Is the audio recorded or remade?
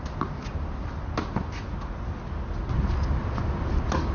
recorded